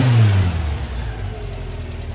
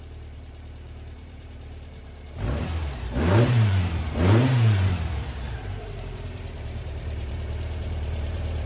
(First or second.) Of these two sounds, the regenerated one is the second